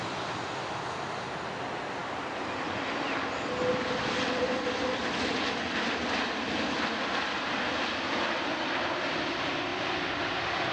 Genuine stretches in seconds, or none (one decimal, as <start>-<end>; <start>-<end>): 0.0-10.7

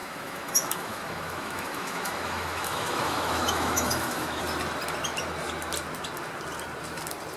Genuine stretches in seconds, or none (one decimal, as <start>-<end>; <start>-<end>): 4.4-7.4

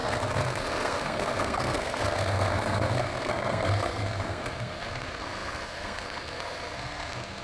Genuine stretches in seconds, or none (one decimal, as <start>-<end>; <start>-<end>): none

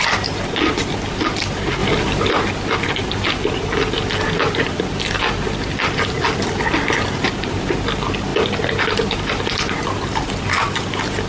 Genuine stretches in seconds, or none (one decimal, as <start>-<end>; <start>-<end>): 0.0-11.3

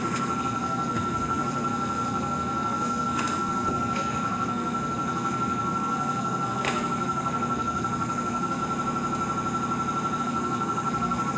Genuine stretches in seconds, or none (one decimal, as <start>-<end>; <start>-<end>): 8.6-10.2

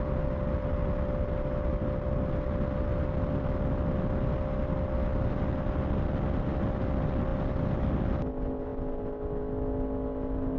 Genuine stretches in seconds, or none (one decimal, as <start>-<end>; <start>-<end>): 0.0-7.3; 7.9-10.6

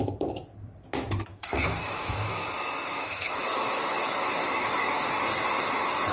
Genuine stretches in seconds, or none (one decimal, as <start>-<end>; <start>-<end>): 0.0-1.3; 5.0-6.1

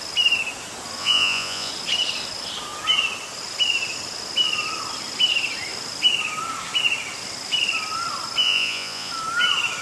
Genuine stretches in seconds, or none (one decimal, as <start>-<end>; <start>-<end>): 0.0-1.0; 1.7-8.4; 9.1-9.8